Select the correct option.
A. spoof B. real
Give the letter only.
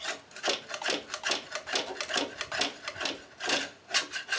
B